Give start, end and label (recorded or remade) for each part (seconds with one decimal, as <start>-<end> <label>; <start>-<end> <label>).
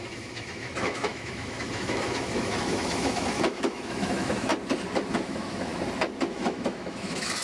0.0-4.5 remade; 4.5-5.1 recorded; 5.1-5.7 remade; 5.7-6.3 recorded; 6.3-7.4 remade